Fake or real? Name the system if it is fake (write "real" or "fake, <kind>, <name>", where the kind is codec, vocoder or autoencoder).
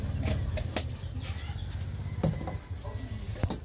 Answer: real